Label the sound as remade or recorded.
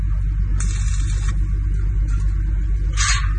recorded